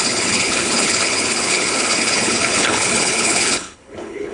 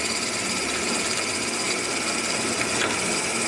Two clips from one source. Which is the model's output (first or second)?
first